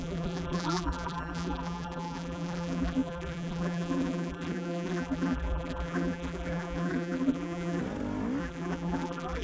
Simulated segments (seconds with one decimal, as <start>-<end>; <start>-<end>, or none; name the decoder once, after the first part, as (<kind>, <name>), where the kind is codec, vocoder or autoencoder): 0.0-7.8 (vocoder, BigVGAN v2); 8.4-9.4